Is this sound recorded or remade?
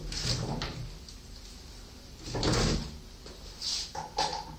recorded